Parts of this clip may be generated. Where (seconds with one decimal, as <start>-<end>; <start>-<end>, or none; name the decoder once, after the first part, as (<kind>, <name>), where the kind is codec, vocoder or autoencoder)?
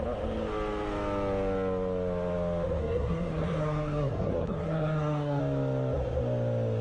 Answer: 2.8-5.4 (codec, SNAC)